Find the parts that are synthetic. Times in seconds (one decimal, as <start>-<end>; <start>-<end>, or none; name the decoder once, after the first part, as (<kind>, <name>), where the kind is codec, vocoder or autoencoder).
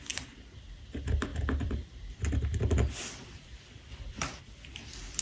1.3-4.4 (vocoder, BigVGAN v2)